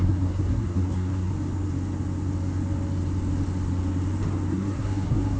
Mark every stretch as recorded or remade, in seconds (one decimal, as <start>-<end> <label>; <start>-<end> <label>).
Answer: 0.0-1.3 remade; 1.3-4.5 recorded; 4.5-5.4 remade